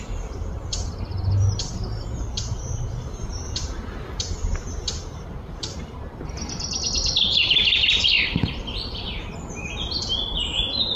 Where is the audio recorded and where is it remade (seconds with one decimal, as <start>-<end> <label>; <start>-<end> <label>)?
0.0-1.7 recorded; 1.7-3.6 remade; 3.6-4.4 recorded; 4.4-6.5 remade; 6.5-11.0 recorded